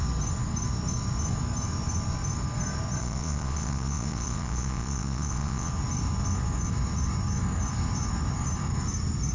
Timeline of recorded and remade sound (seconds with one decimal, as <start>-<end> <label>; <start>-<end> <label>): 0.0-3.0 recorded; 3.0-5.7 remade; 5.7-9.3 recorded